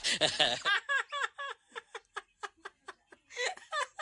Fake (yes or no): no